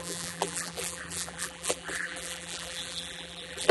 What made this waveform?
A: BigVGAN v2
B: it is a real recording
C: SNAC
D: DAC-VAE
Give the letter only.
A